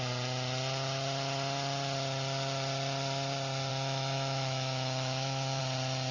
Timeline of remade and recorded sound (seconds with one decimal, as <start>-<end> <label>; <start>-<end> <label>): 0.0-3.7 recorded; 3.7-5.6 remade; 5.6-6.1 recorded